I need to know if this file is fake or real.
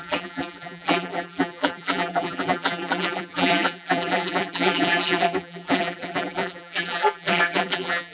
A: fake